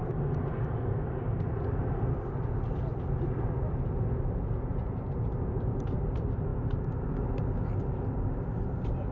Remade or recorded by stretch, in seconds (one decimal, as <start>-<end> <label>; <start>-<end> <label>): 0.0-9.1 recorded